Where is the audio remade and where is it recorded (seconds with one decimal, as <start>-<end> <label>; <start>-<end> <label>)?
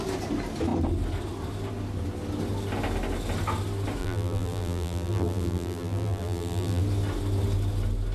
0.0-4.0 recorded; 4.0-6.8 remade; 6.8-8.1 recorded